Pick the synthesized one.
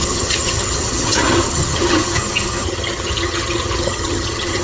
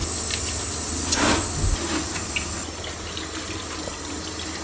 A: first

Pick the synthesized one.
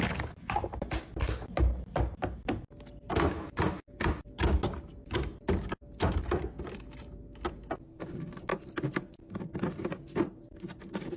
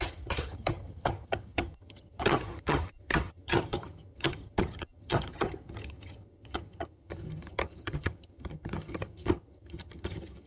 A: second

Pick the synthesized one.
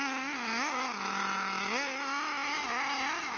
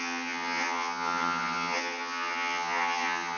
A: second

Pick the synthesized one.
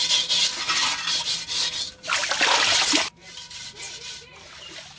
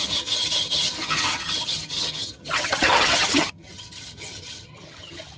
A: second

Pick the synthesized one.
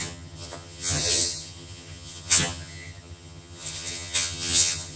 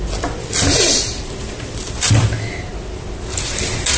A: first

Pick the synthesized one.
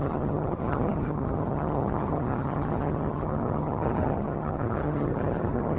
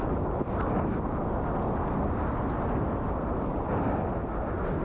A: first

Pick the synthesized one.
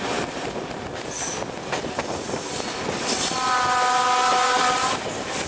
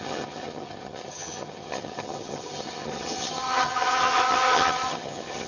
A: second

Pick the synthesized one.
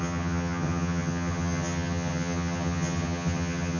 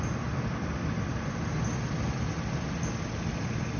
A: first